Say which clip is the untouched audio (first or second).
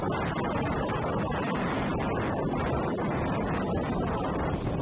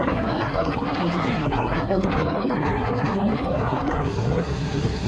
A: first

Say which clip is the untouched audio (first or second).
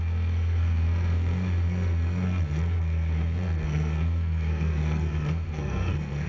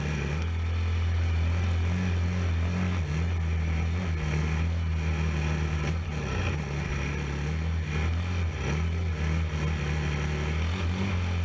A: second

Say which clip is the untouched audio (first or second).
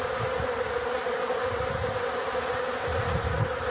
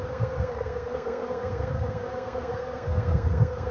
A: first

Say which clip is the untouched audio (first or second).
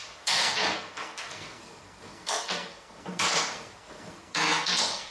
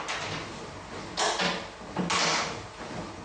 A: second